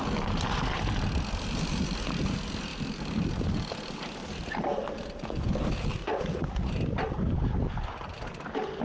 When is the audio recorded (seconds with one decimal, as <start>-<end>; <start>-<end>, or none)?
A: 0.0-6.0; 6.7-8.8